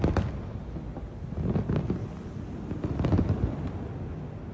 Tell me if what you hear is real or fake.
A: real